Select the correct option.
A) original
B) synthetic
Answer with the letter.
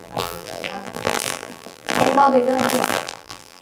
B